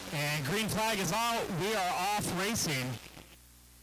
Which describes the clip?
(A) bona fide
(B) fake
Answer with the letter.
A